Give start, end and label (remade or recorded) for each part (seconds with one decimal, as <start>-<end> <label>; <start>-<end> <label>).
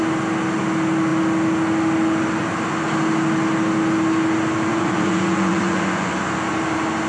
0.0-4.7 recorded; 4.7-6.1 remade; 6.1-7.1 recorded